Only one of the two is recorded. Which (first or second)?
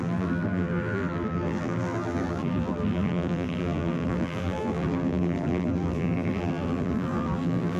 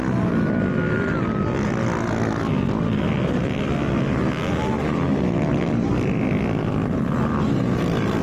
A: second